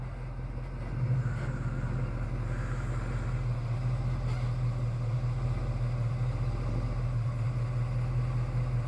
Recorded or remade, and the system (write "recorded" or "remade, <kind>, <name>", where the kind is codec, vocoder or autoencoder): recorded